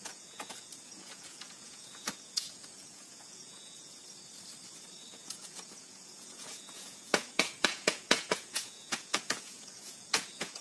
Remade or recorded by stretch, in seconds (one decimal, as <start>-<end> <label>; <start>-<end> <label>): 0.0-4.0 remade; 4.0-5.1 recorded; 5.1-10.6 remade